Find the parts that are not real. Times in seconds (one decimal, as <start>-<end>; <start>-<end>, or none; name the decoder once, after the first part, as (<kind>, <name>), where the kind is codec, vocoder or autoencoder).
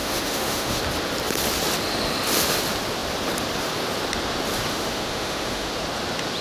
0.0-0.8 (autoencoder, DAC-VAE); 4.7-5.7